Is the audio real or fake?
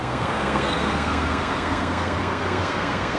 fake